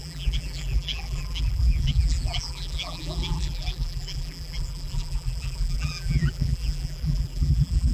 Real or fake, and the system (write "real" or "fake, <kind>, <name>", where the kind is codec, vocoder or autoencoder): fake, vocoder, BigVGAN v2